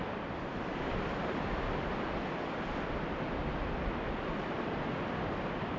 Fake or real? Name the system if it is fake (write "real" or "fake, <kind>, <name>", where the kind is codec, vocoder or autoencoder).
real